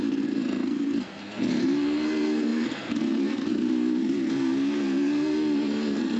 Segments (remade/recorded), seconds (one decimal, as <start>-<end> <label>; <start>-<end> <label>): 0.0-6.2 remade